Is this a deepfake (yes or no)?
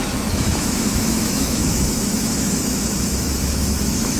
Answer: yes